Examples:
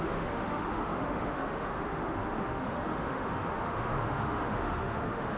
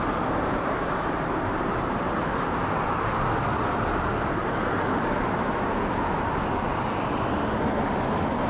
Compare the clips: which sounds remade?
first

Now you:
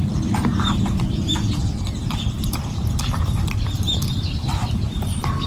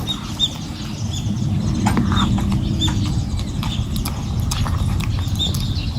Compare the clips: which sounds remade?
first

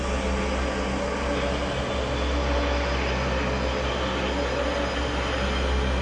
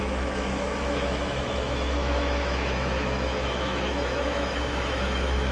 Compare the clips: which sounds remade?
second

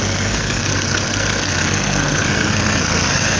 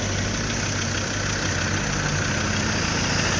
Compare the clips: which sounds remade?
first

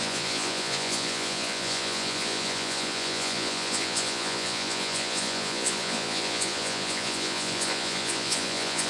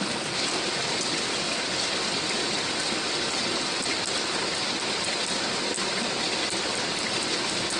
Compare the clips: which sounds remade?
first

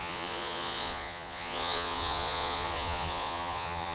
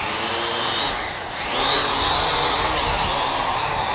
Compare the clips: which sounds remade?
first